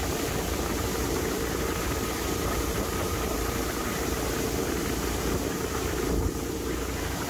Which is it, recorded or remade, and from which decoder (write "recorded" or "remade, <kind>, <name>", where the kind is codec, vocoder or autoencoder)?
remade, vocoder, BigVGAN v2